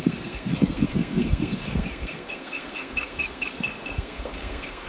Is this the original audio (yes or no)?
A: no